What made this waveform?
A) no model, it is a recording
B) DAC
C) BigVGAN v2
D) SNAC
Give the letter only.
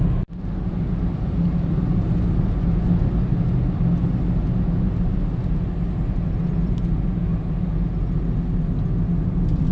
A